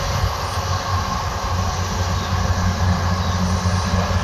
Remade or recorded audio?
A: recorded